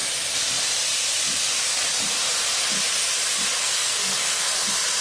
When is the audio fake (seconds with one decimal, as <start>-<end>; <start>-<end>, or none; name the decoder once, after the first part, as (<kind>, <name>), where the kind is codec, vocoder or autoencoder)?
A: 3.6-4.5 (codec, SNAC)